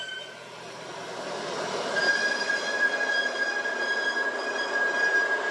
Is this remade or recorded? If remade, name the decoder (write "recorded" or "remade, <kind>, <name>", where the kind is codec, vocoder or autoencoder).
remade, vocoder, BigVGAN v2